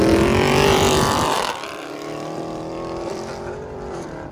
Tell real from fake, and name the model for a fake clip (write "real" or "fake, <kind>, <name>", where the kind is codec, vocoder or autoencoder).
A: fake, vocoder, BigVGAN v2